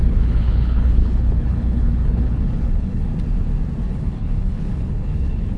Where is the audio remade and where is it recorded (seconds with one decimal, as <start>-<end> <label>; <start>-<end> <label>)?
0.0-3.1 remade; 3.1-3.9 recorded; 3.9-5.6 remade